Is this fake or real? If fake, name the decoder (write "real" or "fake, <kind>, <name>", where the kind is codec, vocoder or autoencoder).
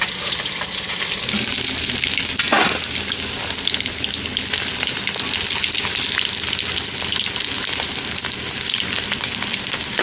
real